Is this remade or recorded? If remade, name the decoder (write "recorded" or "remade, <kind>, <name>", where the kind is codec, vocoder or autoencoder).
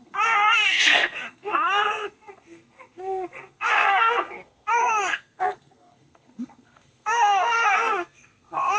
remade, codec, SNAC